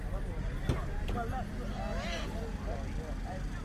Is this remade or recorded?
recorded